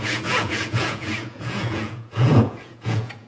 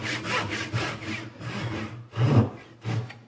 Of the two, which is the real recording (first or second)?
second